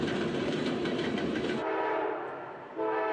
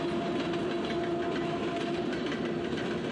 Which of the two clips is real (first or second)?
second